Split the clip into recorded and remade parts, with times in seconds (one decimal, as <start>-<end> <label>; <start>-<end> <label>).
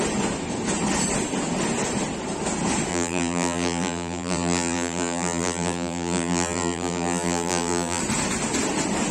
0.0-2.9 recorded; 2.9-8.0 remade; 8.0-9.1 recorded